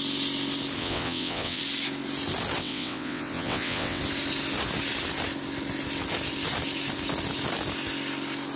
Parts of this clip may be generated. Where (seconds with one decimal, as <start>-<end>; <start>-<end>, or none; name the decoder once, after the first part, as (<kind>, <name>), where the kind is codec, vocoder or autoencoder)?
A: 0.8-1.6 (vocoder, WaveNeXt); 2.6-4.0